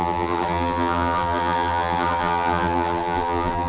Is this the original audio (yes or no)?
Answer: no